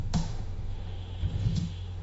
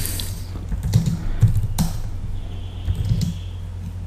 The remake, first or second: first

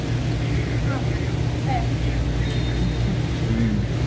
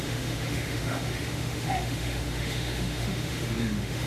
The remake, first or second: second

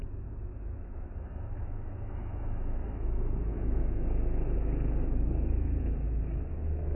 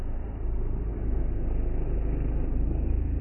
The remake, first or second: first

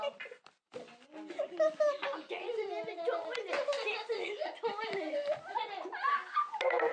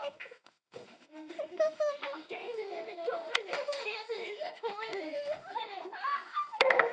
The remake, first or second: second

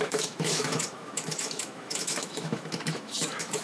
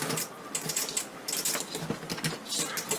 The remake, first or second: first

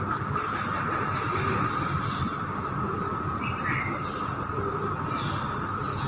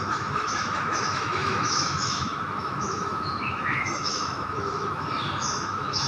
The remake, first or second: second